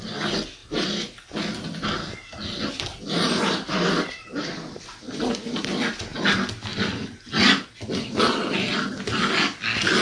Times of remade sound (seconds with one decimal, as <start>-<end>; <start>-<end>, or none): 0.6-1.2; 2.9-5.2

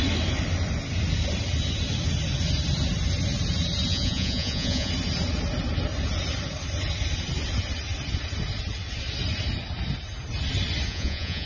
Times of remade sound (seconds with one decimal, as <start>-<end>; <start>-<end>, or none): 3.9-4.9; 10.9-11.5

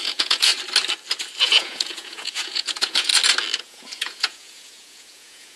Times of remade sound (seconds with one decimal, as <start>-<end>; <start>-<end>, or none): 0.0-0.5; 1.4-3.1; 3.6-5.6

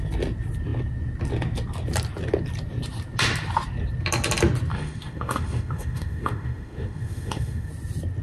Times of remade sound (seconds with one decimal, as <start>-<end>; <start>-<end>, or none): 4.7-7.7

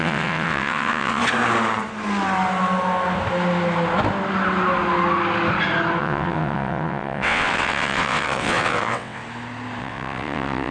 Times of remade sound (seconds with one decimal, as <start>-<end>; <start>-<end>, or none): 0.0-1.2; 6.0-9.2; 9.8-10.7